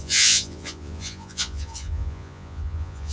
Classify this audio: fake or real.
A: fake